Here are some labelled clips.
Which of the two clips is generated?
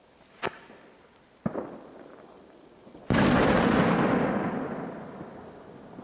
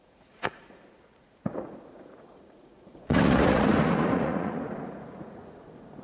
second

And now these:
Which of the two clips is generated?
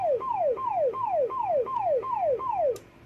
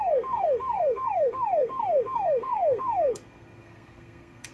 second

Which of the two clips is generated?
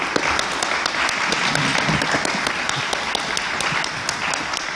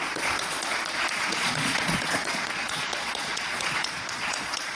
second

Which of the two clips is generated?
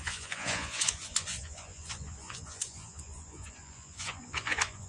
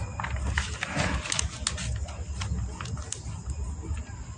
first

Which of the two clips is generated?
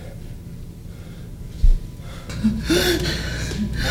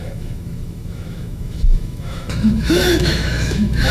second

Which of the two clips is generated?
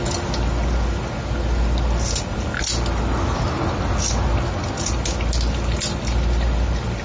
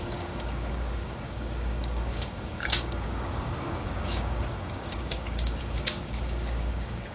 second